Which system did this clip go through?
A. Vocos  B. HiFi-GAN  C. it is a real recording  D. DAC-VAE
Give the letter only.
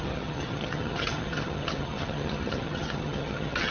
B